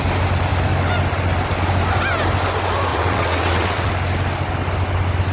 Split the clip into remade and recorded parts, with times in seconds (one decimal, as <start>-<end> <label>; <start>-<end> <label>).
0.0-2.9 recorded; 2.9-3.9 remade; 3.9-5.3 recorded